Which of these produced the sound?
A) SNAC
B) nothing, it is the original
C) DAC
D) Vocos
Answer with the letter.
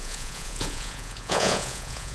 D